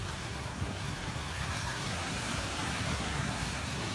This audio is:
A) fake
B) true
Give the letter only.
A